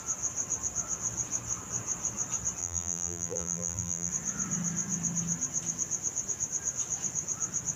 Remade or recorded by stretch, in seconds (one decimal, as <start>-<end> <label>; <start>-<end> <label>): 0.0-2.6 recorded; 2.6-4.1 remade; 4.1-7.8 recorded